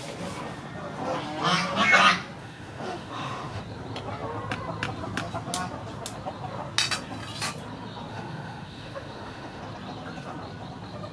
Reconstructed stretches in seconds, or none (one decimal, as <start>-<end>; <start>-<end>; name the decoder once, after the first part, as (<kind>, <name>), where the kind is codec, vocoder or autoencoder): 2.4-3.6 (autoencoder, DAC-VAE); 8.1-9.6